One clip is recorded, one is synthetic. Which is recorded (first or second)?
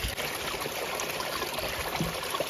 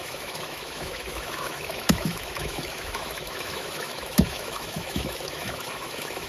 first